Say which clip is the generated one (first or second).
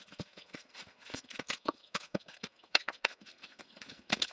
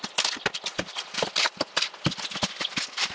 first